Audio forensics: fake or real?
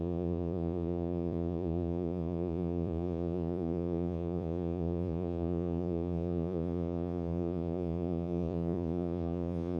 fake